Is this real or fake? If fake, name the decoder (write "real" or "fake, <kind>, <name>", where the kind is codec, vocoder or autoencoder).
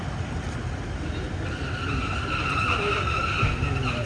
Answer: real